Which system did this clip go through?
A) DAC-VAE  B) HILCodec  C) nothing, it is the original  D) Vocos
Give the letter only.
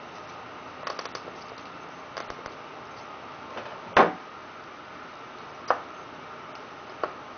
C